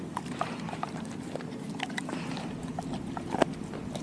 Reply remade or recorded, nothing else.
recorded